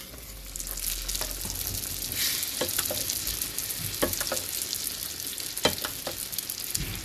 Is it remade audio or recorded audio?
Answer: recorded